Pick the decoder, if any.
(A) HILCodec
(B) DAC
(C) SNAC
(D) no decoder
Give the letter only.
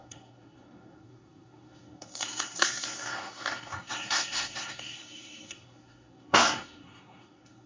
C